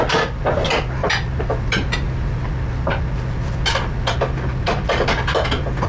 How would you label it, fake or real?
real